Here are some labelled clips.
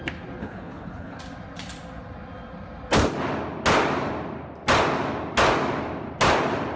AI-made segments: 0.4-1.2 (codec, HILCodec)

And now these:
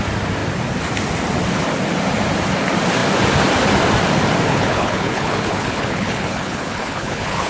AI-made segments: 4.5-7.5 (codec, HILCodec)

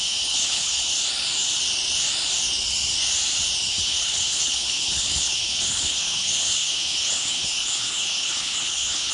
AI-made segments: 0.0-0.9 (codec, HILCodec); 3.7-9.1

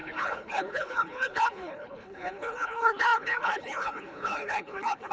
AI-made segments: 0.0-5.1 (codec, HILCodec)

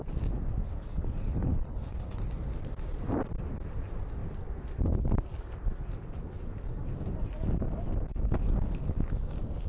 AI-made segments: 0.7-2.4 (codec, HILCodec)